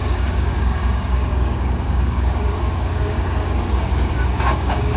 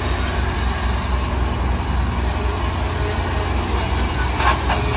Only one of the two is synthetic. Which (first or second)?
first